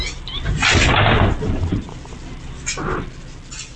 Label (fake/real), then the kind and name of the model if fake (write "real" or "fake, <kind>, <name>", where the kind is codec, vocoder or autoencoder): real